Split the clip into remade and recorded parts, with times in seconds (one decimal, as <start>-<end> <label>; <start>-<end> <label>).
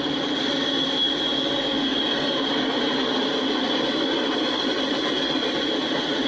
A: 0.0-6.3 recorded